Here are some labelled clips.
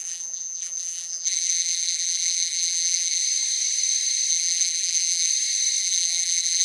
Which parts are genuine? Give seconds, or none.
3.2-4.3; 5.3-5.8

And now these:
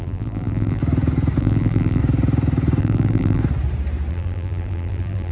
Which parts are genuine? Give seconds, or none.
0.8-1.4; 2.0-2.8; 3.4-4.1